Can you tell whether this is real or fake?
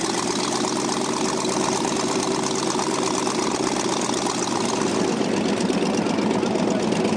real